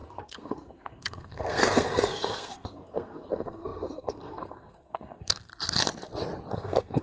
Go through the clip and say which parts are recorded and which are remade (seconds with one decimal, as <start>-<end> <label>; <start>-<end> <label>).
0.0-5.5 remade; 5.5-6.5 recorded; 6.5-7.0 remade